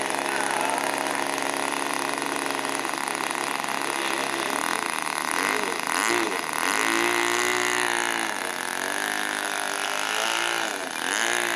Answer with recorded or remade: recorded